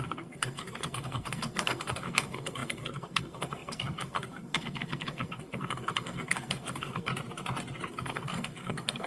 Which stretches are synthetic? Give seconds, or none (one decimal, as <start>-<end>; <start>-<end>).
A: 0.0-7.1; 7.9-9.1